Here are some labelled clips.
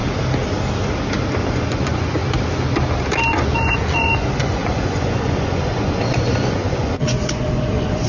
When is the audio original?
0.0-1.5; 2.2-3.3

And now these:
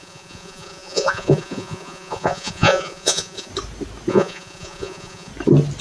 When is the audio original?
3.5-4.1; 5.3-5.8